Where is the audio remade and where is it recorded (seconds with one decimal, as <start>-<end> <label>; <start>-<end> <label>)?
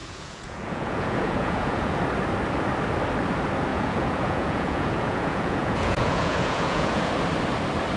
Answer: 0.0-2.0 remade; 2.0-3.7 recorded; 3.7-7.1 remade; 7.1-8.0 recorded